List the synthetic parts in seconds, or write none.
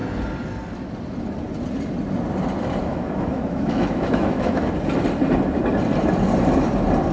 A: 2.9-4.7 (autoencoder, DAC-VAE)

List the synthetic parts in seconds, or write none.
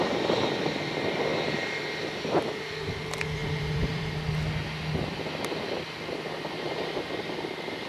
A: 3.4-4.0 (vocoder, BigVGAN v2)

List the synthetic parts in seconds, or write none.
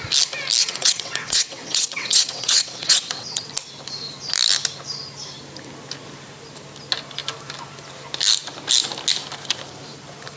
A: 0.6-3.5 (vocoder, WaveNeXt)